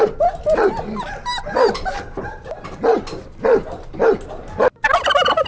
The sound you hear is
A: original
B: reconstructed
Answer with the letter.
A